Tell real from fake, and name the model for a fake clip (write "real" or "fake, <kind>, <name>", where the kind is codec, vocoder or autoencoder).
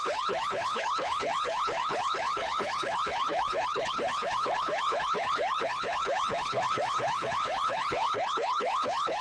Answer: fake, codec, HILCodec